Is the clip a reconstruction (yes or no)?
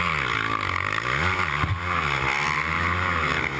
no